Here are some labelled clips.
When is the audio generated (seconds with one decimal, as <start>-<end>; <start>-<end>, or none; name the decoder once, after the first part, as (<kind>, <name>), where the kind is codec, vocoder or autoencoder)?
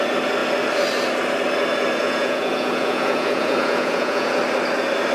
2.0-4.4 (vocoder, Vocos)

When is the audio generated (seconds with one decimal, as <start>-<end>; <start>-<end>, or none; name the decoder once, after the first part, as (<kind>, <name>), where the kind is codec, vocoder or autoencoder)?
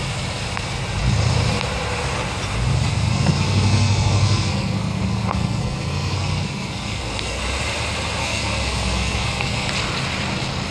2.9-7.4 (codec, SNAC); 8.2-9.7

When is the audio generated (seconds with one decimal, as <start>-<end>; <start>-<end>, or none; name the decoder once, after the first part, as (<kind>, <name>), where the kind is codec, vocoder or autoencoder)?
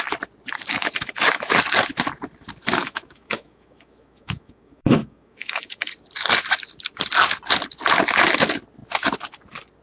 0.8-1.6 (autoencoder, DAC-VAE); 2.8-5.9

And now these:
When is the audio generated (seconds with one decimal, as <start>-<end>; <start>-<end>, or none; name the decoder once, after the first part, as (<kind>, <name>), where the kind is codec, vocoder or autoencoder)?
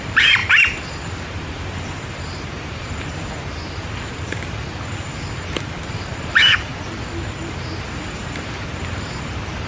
0.0-6.7 (vocoder, BigVGAN v2); 7.4-9.7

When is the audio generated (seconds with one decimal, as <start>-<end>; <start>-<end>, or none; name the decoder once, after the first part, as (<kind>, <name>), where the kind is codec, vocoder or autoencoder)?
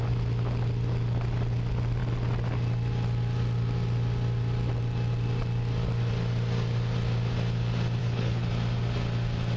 8.0-8.5 (codec, HILCodec)